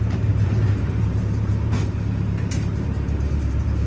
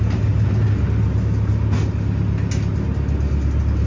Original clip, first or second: second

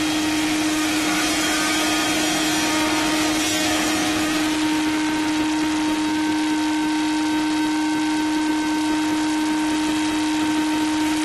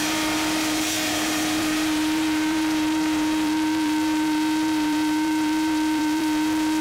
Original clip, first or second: first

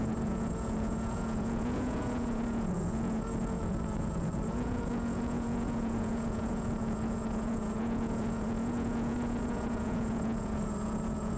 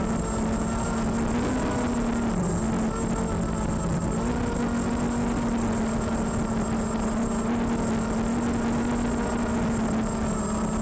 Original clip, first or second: second